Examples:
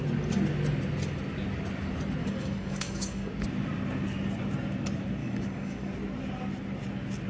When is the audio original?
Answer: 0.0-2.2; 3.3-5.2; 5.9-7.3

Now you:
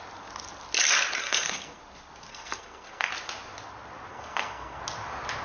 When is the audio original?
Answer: 0.0-1.2; 1.8-2.3; 3.1-4.1; 4.8-5.4

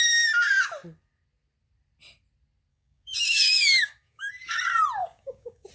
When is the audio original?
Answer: 0.0-2.7; 4.3-5.0

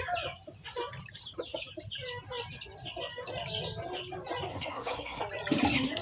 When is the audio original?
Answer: 0.0-4.5; 5.2-6.0

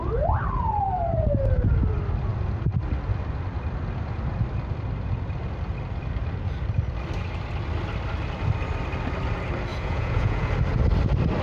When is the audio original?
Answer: 0.0-9.7; 10.5-11.4

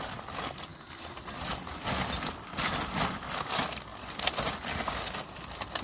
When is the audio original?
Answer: 0.0-5.8